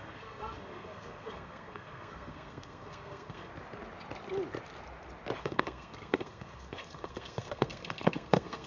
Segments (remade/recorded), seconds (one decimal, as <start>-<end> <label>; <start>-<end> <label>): 0.0-3.5 remade; 3.5-5.4 recorded; 5.4-8.7 remade